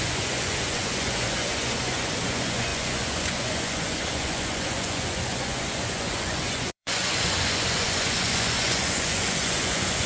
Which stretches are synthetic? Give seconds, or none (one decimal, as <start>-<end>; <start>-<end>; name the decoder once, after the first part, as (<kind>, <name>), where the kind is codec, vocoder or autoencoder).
0.0-10.1 (vocoder, Vocos)